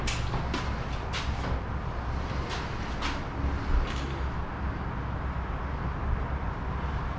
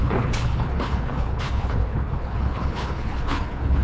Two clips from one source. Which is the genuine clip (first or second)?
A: first